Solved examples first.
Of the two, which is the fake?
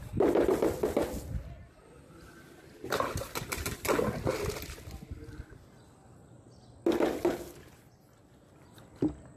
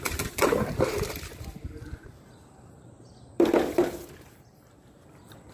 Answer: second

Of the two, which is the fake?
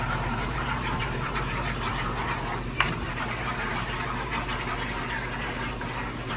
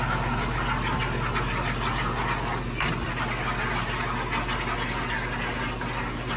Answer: first